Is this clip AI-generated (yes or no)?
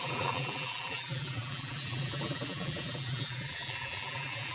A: yes